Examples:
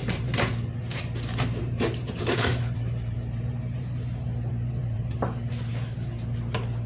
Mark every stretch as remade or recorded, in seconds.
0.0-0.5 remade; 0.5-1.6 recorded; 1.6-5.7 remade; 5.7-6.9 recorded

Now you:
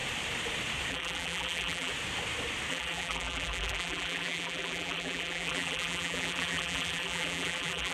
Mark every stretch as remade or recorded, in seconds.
0.0-0.9 recorded; 0.9-1.9 remade; 1.9-2.7 recorded; 2.7-7.9 remade

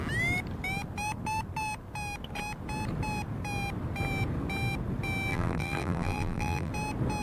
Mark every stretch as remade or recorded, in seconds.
0.0-5.3 recorded; 5.3-6.7 remade; 6.7-7.2 recorded